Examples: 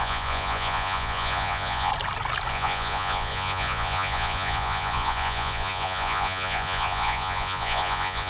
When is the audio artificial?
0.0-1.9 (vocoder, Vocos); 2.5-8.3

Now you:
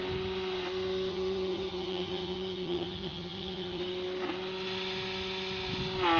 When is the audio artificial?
1.1-3.8 (vocoder, HiFi-GAN)

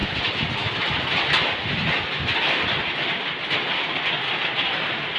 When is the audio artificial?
none

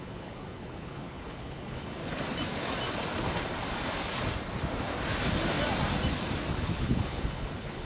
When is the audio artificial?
0.0-2.0 (codec, HILCodec); 6.5-7.9

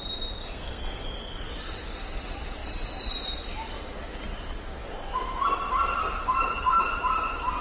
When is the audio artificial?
0.4-1.0 (codec, SNAC)

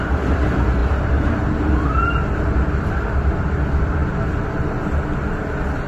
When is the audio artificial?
none

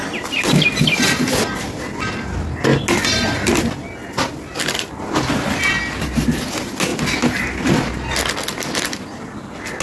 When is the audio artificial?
none

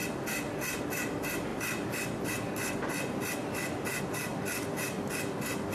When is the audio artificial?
none